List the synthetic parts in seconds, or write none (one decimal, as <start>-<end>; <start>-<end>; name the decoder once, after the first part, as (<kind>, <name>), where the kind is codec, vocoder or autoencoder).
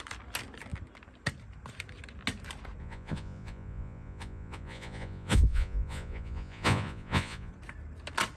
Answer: 2.8-7.5 (vocoder, Vocos)